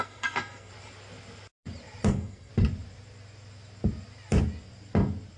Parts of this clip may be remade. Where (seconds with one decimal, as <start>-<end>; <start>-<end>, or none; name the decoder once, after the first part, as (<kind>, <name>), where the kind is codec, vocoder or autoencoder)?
0.0-0.7 (codec, SNAC); 2.1-2.5